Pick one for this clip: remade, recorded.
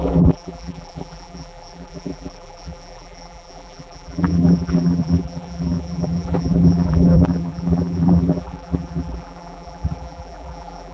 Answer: remade